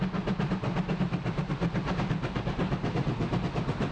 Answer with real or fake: real